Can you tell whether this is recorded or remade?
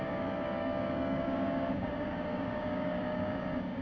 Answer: remade